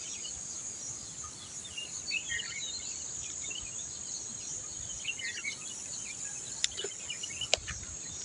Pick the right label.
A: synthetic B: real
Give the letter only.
A